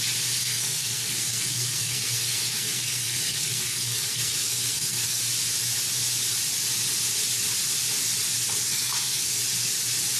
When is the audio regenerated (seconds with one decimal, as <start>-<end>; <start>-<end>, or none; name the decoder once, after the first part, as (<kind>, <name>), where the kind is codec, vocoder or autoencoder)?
0.4-5.2 (codec, SNAC); 8.7-9.4